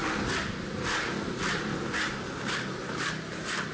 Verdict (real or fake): real